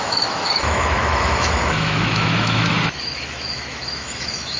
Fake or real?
fake